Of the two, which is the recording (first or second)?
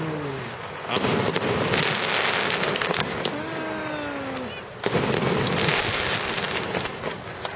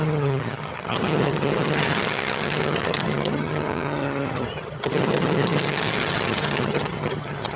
first